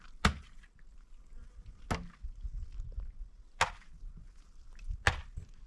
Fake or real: real